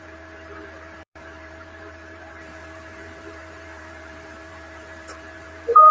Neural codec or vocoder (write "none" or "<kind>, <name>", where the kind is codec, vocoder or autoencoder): vocoder, BigVGAN v2